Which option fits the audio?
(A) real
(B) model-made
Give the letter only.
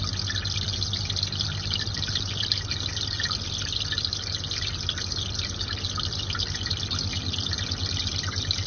A